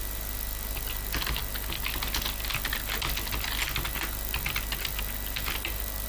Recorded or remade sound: recorded